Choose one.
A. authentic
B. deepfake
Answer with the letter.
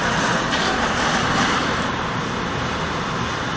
A